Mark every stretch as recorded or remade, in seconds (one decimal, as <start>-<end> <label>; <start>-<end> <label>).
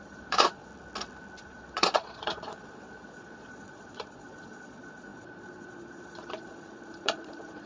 0.0-0.7 remade; 0.7-1.4 recorded; 1.4-7.7 remade